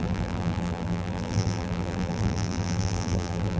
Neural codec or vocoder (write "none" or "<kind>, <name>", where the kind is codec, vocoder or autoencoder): vocoder, BigVGAN v2